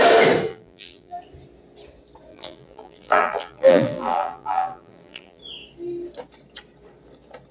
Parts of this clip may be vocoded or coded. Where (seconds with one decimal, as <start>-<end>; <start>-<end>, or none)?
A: 0.5-1.2; 2.3-5.4